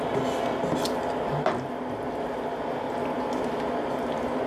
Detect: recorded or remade recorded